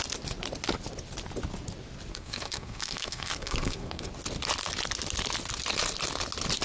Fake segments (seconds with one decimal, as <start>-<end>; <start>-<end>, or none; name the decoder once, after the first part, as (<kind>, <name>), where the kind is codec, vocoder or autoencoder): 2.1-4.1 (codec, SNAC)